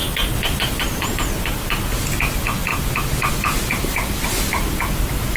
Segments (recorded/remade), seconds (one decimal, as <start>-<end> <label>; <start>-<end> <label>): 0.0-0.8 remade; 0.8-5.4 recorded